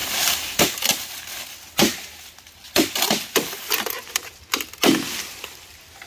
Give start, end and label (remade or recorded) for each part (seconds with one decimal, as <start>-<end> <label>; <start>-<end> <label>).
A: 0.0-6.1 recorded